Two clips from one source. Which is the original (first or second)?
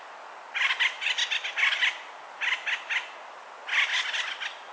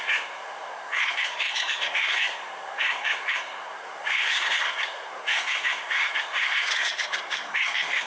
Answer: first